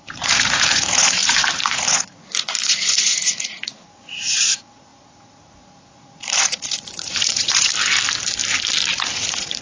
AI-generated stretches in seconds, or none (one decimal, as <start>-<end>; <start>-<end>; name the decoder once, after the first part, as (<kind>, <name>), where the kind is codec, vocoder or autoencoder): 0.0-7.7 (vocoder, Vocos); 9.1-9.6